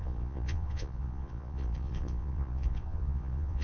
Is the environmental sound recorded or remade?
remade